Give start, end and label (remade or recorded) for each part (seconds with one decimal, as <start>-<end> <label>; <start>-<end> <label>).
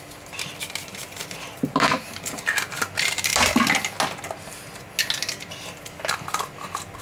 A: 0.0-0.9 recorded; 0.9-2.4 remade; 2.4-7.0 recorded